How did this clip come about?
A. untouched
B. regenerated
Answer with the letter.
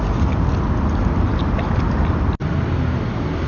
A